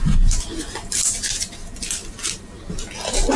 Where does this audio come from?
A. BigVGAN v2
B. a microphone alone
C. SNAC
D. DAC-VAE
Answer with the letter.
B